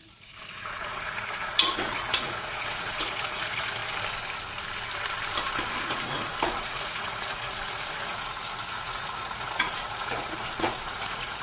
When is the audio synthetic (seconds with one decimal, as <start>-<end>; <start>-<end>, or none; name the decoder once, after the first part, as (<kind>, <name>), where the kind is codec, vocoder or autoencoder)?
0.0-3.8 (vocoder, Vocos); 5.8-11.4